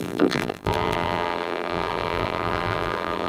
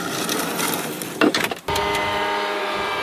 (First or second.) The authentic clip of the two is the second